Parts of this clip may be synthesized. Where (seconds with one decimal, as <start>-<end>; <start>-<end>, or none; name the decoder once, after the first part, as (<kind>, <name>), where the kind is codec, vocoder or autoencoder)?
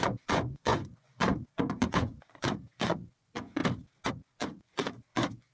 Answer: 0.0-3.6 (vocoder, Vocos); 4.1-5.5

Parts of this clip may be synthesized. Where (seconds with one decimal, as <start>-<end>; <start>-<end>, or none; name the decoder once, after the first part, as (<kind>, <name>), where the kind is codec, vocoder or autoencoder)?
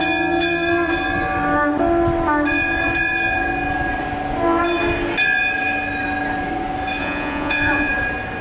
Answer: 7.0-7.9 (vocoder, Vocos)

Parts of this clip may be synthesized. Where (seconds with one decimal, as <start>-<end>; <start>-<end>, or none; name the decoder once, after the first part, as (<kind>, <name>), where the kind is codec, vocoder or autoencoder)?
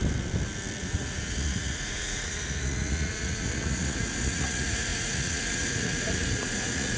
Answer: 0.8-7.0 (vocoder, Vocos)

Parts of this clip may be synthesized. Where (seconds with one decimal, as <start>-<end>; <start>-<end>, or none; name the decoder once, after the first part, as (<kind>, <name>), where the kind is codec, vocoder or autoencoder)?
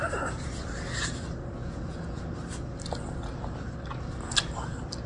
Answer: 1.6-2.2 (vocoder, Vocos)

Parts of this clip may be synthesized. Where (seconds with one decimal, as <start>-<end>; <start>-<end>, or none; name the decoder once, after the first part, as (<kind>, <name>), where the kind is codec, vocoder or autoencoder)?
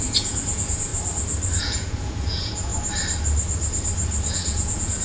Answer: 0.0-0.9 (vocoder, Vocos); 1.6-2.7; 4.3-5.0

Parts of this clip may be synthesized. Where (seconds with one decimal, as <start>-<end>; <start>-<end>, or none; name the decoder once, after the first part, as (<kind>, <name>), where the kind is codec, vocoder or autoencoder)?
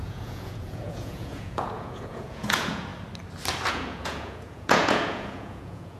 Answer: 0.0-2.9 (vocoder, Vocos); 3.7-6.0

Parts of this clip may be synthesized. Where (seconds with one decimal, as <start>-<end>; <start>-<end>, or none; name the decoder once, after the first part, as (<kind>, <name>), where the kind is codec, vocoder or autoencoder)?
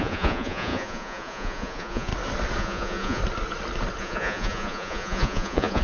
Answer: 0.0-2.1 (vocoder, Vocos); 2.6-3.2; 4.0-5.8